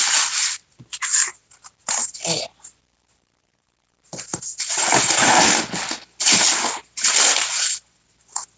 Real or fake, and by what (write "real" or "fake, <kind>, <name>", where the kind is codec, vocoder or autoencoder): real